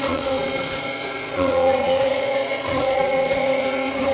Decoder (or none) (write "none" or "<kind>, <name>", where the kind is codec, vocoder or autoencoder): vocoder, Vocos